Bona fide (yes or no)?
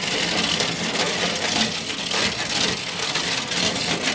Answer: yes